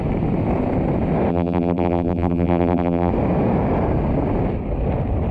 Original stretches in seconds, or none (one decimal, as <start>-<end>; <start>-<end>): 0.0-1.3; 3.1-5.3